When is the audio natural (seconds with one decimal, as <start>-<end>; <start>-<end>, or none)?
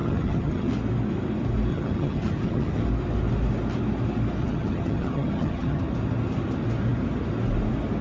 0.7-1.7; 2.8-4.4; 5.8-8.0